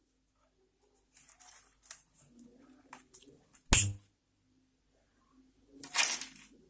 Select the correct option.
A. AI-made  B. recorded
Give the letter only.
B